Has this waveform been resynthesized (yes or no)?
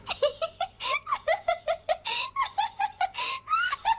yes